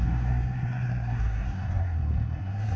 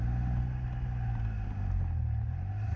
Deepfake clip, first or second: first